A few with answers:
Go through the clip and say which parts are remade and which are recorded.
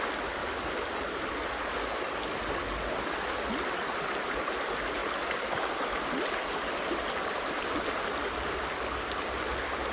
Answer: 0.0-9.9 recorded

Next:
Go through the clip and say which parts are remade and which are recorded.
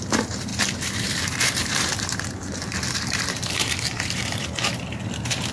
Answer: 0.0-5.5 remade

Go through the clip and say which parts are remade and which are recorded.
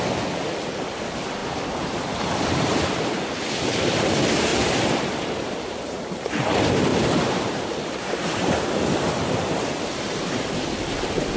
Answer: 0.0-1.4 recorded; 1.4-3.0 remade; 3.0-4.5 recorded; 4.5-6.4 remade; 6.4-6.9 recorded; 6.9-10.5 remade; 10.5-11.4 recorded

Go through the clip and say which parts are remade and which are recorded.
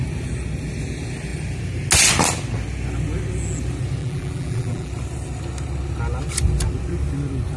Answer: 0.0-4.0 recorded; 4.0-4.9 remade; 4.9-7.6 recorded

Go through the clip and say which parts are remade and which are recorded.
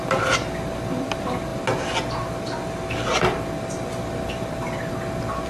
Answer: 0.0-5.5 recorded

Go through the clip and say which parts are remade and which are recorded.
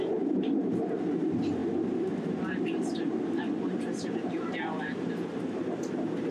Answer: 0.0-6.3 remade